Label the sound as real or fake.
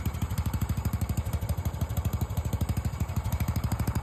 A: fake